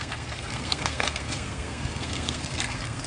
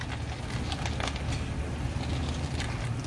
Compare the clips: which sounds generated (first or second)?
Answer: first